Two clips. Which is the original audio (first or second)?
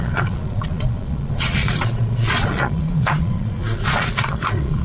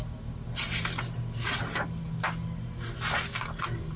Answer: second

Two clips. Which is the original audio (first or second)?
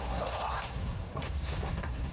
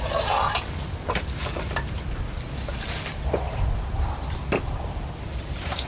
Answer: second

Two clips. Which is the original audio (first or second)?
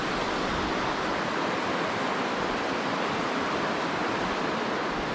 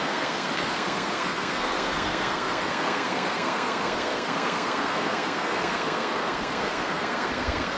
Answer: first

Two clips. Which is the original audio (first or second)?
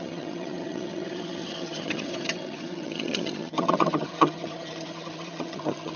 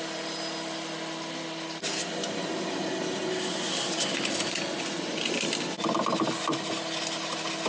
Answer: second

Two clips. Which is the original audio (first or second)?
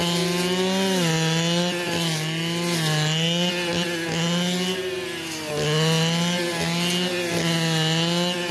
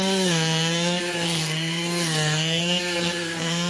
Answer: first